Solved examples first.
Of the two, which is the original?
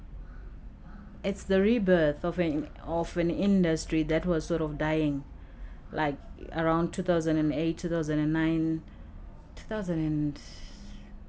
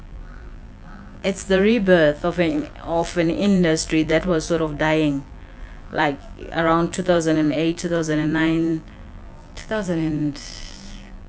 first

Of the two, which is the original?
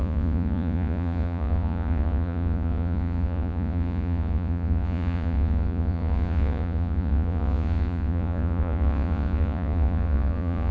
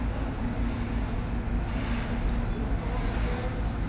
second